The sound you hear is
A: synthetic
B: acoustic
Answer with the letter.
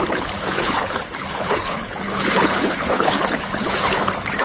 A